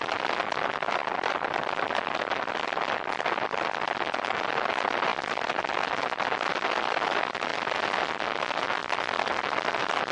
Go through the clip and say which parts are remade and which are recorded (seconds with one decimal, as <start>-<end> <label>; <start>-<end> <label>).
0.0-8.8 recorded; 8.8-9.7 remade; 9.7-10.1 recorded

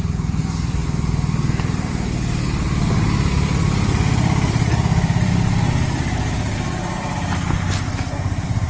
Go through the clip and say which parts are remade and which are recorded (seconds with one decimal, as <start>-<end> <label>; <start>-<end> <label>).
0.0-8.7 remade